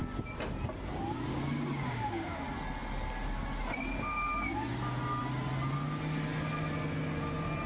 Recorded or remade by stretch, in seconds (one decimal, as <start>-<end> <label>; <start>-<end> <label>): 0.0-1.3 recorded; 1.3-2.4 remade; 2.4-7.7 recorded